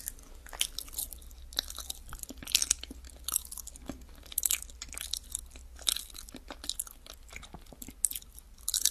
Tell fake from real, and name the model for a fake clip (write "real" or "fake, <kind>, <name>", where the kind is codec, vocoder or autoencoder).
real